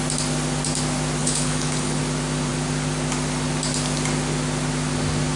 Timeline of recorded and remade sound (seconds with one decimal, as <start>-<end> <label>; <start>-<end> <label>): 0.0-1.2 recorded; 1.2-2.0 remade; 2.0-5.4 recorded